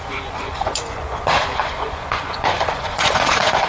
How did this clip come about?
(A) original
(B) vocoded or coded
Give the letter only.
B